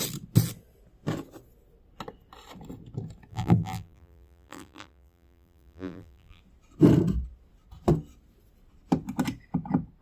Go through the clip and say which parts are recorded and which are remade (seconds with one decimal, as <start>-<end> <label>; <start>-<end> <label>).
0.0-3.3 recorded; 3.3-6.4 remade; 6.4-10.0 recorded